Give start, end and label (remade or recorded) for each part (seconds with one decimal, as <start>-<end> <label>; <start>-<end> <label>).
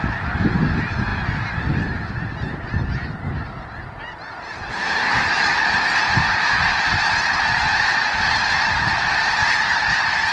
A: 0.0-10.3 recorded